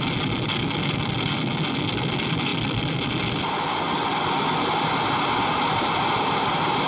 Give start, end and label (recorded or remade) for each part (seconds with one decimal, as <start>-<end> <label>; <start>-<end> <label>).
0.0-6.9 recorded